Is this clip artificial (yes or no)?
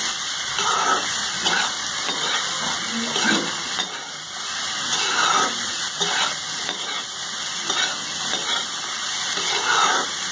no